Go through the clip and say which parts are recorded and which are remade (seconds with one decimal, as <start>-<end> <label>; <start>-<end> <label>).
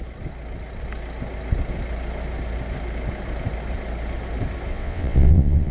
0.0-4.7 recorded; 4.7-5.7 remade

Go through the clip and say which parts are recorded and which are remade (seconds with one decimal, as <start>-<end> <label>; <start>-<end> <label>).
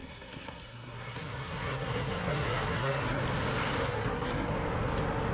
0.0-3.2 remade; 3.2-3.8 recorded; 3.8-4.5 remade; 4.5-5.3 recorded